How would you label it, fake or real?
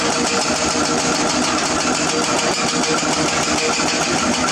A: real